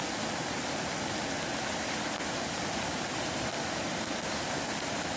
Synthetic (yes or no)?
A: no